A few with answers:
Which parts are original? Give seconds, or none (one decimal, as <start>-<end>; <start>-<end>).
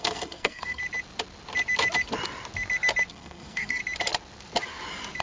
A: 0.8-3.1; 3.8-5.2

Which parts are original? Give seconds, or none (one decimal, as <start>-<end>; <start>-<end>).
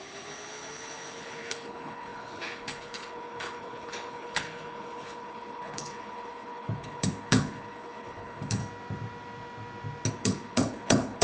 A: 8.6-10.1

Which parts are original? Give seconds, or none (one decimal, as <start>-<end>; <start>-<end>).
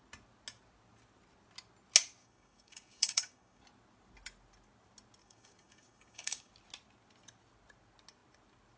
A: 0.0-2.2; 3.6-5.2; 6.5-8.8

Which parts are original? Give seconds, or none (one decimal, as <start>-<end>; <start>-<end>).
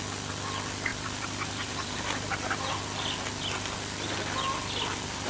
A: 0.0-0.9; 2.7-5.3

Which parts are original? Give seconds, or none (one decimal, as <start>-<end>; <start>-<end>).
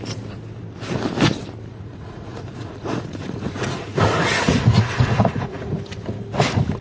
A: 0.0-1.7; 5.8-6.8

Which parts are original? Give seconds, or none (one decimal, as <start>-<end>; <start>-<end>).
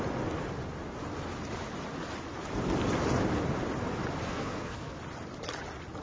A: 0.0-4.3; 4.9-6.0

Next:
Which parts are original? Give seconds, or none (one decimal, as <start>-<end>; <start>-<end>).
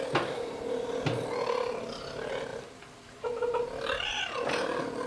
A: 0.0-5.1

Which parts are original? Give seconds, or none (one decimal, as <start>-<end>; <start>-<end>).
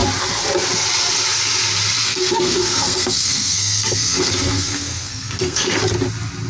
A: 0.0-2.0; 5.8-6.5